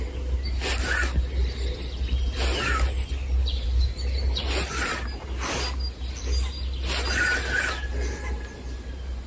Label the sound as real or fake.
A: real